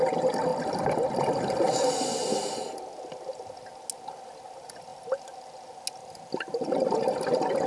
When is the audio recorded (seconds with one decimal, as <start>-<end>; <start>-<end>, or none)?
0.0-7.7